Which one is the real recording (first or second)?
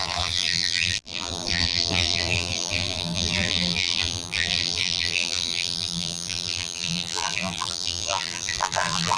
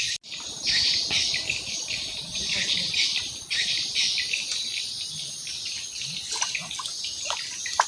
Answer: second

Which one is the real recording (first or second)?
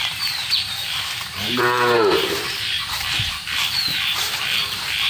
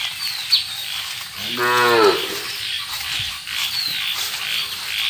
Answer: second